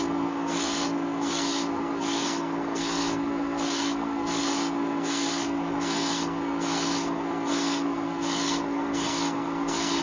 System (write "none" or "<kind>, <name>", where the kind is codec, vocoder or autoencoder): codec, SNAC